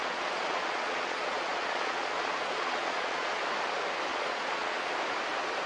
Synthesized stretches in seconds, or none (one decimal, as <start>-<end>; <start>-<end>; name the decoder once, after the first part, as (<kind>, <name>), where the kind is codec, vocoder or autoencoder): 0.0-3.4 (vocoder, Vocos); 4.1-4.9